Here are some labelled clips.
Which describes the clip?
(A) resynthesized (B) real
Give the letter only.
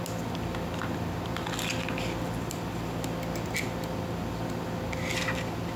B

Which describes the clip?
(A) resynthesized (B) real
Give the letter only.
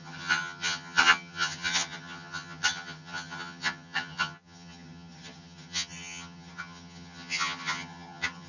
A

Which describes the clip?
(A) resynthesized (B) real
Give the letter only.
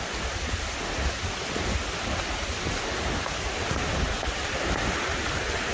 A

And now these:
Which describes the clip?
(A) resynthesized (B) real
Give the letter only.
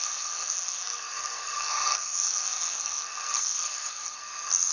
A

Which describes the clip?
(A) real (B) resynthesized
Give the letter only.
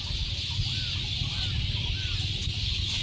A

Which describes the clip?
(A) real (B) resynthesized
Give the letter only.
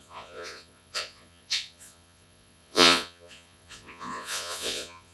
B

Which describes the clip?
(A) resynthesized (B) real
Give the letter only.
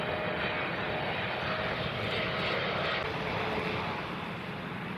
B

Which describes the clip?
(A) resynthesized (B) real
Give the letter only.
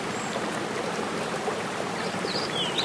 B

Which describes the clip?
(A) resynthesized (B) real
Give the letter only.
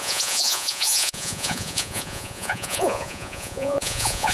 A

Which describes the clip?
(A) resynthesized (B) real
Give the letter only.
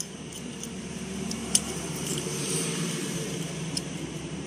A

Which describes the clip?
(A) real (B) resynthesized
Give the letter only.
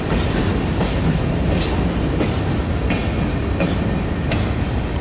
A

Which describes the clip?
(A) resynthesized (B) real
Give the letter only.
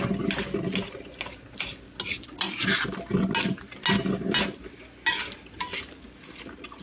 B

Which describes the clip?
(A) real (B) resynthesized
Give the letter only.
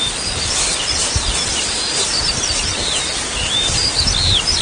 A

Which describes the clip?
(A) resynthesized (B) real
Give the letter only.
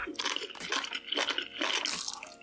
B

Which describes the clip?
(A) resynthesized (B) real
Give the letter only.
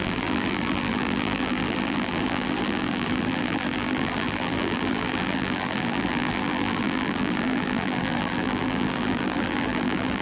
A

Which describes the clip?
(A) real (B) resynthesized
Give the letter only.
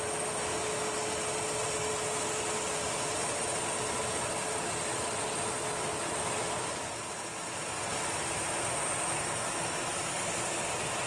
A